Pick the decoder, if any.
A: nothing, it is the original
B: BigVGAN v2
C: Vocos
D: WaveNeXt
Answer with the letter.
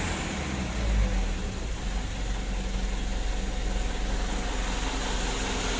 A